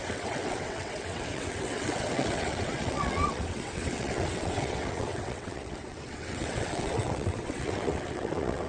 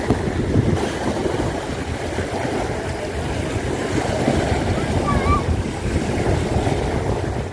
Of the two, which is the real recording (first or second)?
second